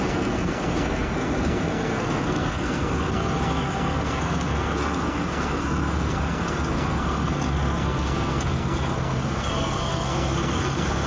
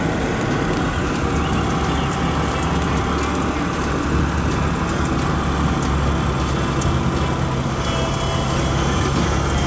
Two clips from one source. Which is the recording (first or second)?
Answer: second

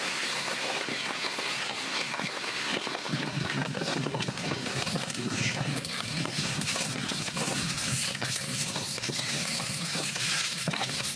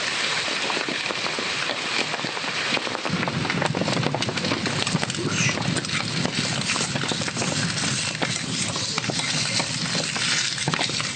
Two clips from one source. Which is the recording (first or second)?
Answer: second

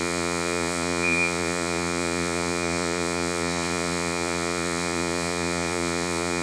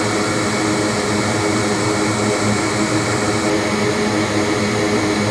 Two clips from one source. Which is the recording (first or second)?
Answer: second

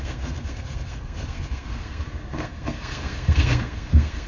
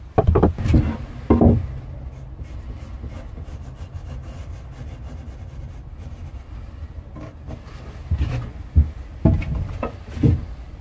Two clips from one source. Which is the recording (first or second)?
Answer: second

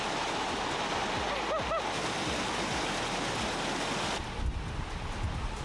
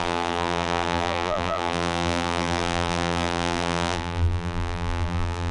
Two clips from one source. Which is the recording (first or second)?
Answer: first